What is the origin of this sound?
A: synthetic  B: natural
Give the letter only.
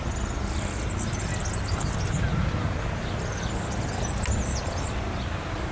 B